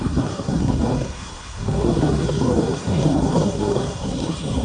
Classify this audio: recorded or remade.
remade